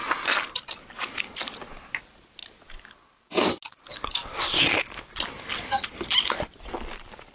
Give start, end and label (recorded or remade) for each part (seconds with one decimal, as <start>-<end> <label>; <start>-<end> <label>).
0.0-7.3 recorded